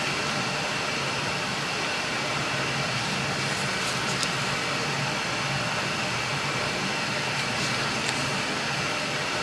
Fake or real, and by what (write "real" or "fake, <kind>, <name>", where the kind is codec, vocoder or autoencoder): real